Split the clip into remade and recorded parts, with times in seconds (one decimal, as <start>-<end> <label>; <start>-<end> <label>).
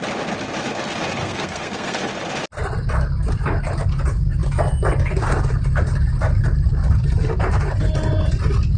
0.0-1.2 recorded; 1.2-2.1 remade; 2.1-8.8 recorded